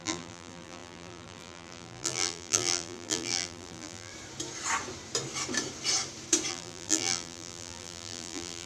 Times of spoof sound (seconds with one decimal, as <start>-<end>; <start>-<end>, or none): 0.0-4.1; 6.5-8.7